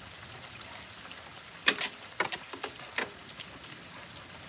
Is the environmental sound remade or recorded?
recorded